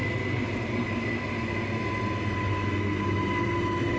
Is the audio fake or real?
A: real